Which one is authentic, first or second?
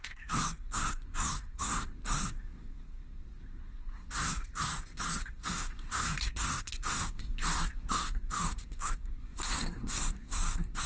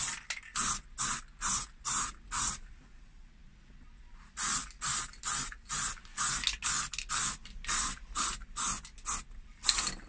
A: second